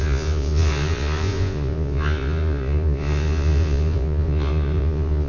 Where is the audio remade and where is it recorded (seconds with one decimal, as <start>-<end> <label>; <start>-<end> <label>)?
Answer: 0.0-5.3 remade